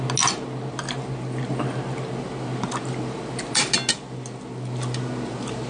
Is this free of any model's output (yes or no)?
yes